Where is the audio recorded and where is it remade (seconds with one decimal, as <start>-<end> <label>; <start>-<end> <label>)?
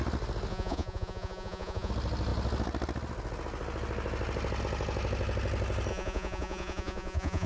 0.0-0.5 recorded; 0.5-1.9 remade; 1.9-5.9 recorded; 5.9-7.5 remade